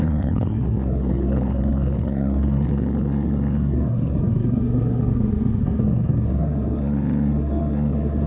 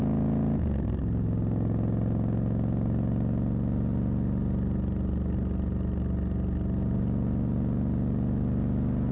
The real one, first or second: second